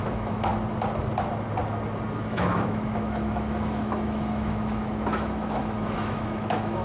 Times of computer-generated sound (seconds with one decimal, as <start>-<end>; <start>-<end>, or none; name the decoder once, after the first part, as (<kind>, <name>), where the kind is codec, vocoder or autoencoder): 0.0-0.5 (autoencoder, DAC-VAE); 2.2-6.8